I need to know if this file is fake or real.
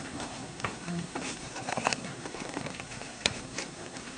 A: fake